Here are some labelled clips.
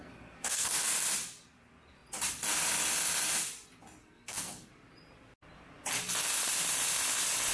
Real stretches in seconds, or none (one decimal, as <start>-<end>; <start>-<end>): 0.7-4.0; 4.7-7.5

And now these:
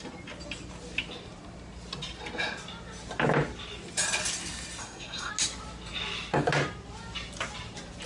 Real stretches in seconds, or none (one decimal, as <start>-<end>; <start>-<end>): 0.0-4.8; 5.3-8.1

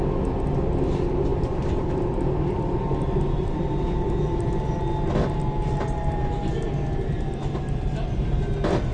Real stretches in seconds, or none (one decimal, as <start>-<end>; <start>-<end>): 0.0-8.9